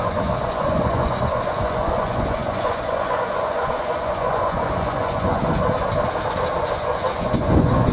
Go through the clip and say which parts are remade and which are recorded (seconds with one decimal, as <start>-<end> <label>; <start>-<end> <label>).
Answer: 0.0-5.4 remade; 5.4-6.6 recorded; 6.6-7.9 remade